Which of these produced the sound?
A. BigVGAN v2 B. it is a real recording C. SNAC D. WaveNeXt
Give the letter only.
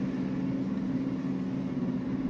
B